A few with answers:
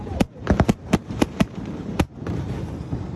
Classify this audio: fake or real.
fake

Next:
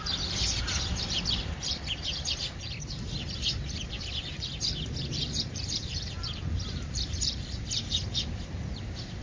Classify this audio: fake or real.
fake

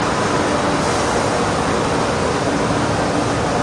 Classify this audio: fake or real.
real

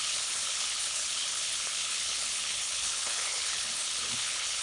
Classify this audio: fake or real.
fake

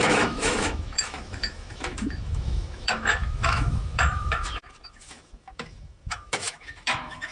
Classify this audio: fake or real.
fake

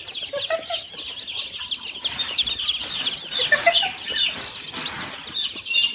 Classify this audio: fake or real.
real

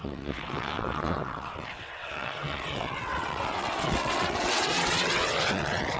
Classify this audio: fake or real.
fake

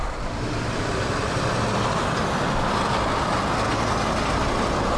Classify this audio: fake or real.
real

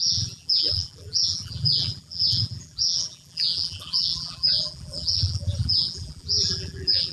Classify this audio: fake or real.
fake